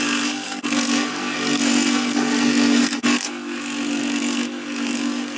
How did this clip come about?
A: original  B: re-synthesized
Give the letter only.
B